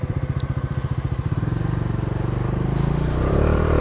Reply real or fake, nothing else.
fake